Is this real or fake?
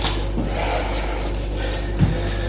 real